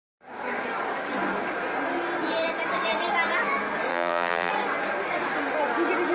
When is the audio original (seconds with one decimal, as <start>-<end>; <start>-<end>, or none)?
0.0-3.9; 4.5-6.1